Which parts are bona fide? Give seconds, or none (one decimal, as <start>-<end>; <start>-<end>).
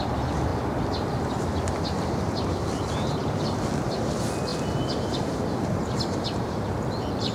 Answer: 0.0-4.5; 6.6-7.3